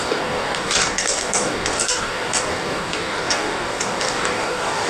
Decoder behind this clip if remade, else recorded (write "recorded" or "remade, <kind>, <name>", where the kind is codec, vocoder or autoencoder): remade, codec, DAC